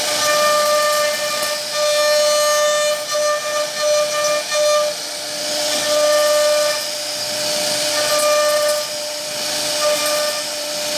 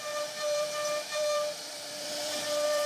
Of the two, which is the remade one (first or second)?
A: second